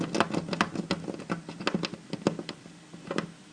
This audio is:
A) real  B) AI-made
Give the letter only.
A